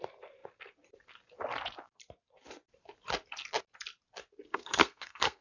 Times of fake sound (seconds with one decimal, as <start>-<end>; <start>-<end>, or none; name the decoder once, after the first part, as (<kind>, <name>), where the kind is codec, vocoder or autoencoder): 4.5-5.4 (codec, SNAC)